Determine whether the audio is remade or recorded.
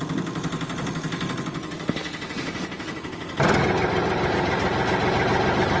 recorded